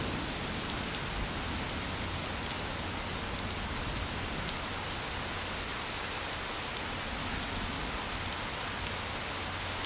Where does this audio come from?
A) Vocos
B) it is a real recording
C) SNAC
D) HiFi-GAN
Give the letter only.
B